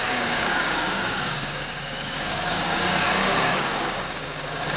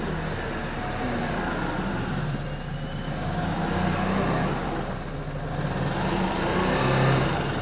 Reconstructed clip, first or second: first